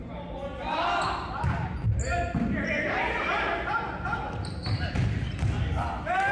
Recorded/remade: recorded